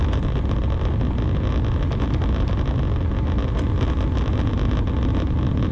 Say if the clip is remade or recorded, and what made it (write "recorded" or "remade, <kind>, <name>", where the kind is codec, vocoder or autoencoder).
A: recorded